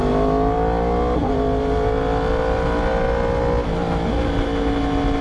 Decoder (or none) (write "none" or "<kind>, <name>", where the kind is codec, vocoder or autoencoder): none